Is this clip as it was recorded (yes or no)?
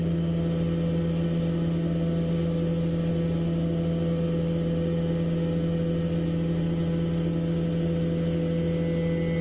yes